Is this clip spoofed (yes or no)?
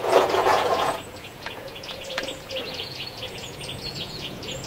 yes